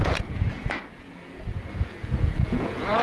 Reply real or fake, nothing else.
fake